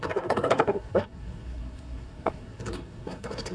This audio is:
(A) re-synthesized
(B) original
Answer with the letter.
A